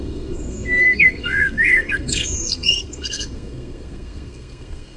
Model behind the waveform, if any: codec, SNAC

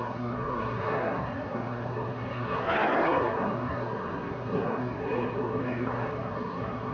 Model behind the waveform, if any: codec, SNAC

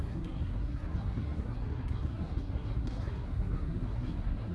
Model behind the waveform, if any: codec, SNAC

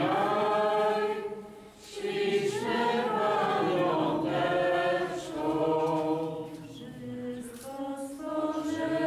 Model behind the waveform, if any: none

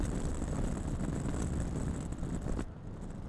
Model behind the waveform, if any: none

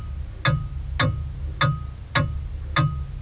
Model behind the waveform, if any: none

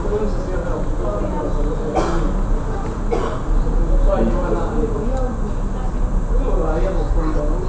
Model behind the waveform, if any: none